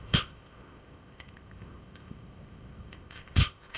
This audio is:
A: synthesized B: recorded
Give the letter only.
A